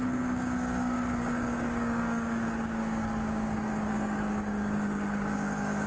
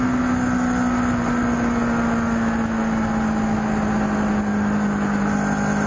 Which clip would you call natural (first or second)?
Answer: second